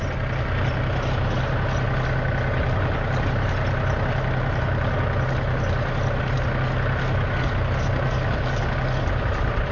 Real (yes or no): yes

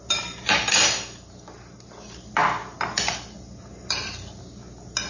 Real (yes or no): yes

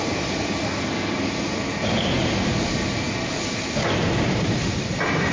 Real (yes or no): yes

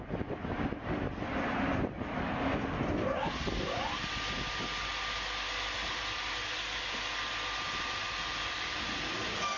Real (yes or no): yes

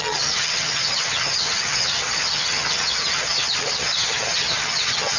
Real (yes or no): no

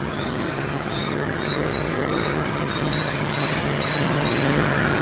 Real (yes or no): no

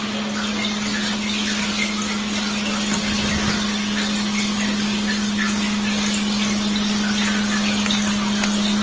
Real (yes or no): yes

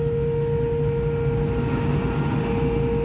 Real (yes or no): yes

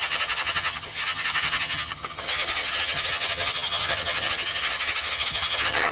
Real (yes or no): no